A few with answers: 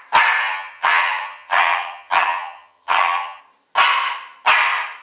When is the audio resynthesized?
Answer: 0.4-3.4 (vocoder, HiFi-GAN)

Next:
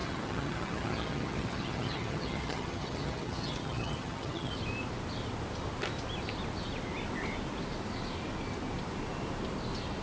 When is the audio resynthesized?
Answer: 0.0-4.6 (vocoder, HiFi-GAN)

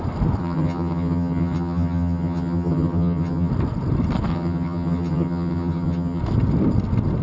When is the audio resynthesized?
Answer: 0.4-3.5 (vocoder, HiFi-GAN); 4.3-6.2

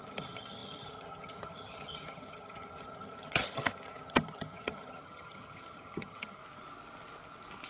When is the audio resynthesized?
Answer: 0.0-6.4 (vocoder, HiFi-GAN)